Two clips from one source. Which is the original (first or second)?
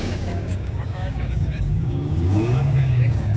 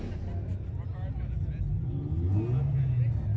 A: second